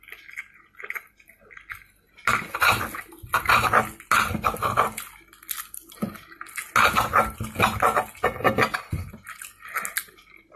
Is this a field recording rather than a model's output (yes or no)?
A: yes